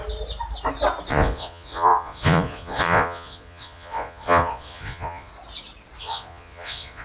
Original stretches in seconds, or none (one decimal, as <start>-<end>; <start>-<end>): 0.0-1.1; 5.3-6.0

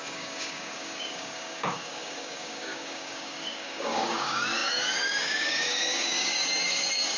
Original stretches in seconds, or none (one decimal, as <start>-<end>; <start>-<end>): none

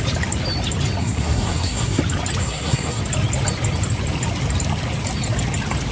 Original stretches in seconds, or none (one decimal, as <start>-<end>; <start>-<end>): 0.0-1.0; 2.0-2.4; 3.0-5.9

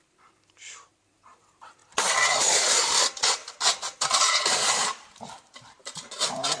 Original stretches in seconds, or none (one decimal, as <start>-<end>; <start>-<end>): 1.8-2.4; 3.4-4.2; 5.8-6.6

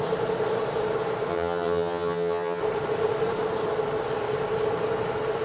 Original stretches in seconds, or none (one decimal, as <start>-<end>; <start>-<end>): 0.0-1.3; 2.6-5.4